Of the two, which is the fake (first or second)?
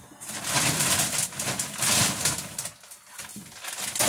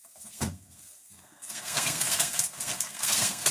second